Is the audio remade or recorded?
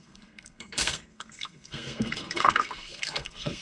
remade